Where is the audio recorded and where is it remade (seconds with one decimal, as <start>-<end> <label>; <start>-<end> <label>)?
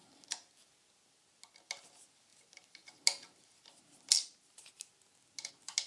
0.0-5.9 recorded